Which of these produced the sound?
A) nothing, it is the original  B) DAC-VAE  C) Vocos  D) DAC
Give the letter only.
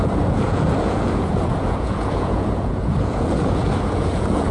C